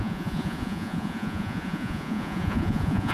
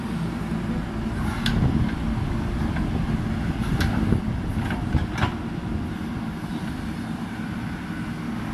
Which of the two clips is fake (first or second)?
first